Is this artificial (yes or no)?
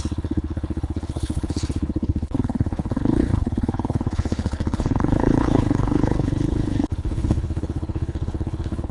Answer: yes